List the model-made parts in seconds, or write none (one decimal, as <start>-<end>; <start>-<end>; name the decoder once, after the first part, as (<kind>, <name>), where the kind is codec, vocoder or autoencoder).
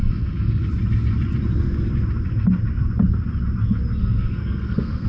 0.0-0.6 (codec, SNAC); 4.0-5.1